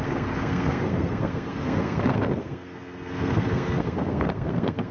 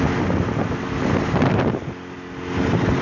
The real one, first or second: second